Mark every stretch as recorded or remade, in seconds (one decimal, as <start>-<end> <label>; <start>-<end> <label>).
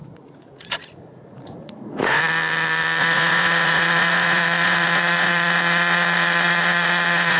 0.0-2.2 remade; 2.2-3.0 recorded; 3.0-7.4 remade